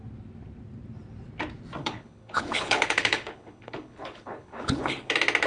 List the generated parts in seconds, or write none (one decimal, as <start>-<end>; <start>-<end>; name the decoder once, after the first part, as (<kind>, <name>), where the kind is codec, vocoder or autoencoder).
1.8-5.1 (codec, HILCodec)